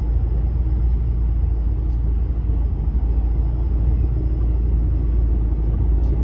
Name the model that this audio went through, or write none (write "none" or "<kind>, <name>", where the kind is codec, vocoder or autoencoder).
none